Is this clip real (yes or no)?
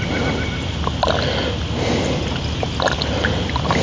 yes